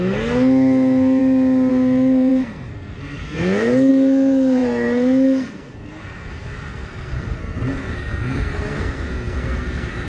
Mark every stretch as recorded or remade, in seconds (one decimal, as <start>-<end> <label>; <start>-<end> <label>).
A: 0.0-1.2 remade; 1.2-1.7 recorded; 1.7-10.1 remade